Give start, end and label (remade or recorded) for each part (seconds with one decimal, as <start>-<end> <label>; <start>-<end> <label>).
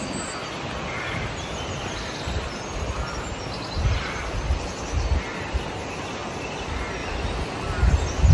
0.0-8.3 recorded